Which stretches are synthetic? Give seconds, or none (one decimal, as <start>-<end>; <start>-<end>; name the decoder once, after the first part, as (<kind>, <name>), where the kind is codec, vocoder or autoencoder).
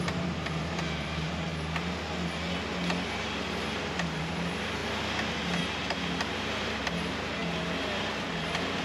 0.0-1.5 (vocoder, BigVGAN v2); 4.2-4.8; 5.6-7.4